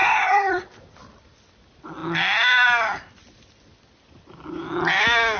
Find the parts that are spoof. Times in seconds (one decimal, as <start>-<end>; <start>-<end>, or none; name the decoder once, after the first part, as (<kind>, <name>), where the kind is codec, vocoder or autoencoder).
0.0-0.6 (codec, SNAC)